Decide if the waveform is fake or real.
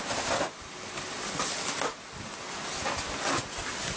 real